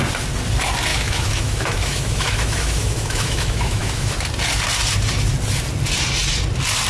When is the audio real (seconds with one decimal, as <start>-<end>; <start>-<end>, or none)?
0.0-0.9; 4.1-6.9